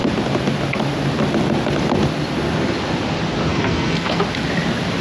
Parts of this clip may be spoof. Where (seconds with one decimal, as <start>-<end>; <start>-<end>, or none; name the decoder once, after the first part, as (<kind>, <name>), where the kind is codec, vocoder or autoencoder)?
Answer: 3.5-4.2 (codec, SNAC)